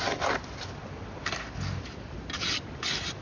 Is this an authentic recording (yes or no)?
yes